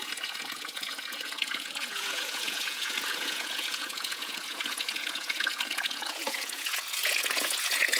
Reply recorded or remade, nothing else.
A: remade